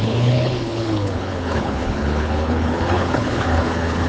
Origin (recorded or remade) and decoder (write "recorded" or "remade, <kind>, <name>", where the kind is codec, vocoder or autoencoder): remade, codec, HILCodec